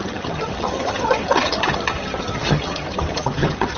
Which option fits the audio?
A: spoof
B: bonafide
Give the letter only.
A